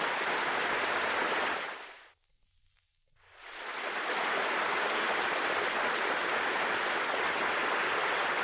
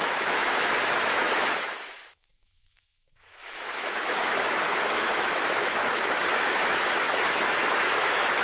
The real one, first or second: first